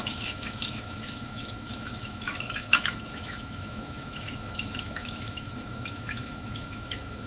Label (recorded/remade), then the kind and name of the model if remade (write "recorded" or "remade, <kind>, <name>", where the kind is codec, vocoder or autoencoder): remade, autoencoder, DAC-VAE